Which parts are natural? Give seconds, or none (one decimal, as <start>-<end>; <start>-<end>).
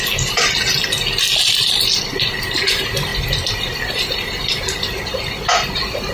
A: 0.0-6.1